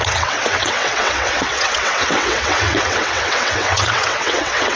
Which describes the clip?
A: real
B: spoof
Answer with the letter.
B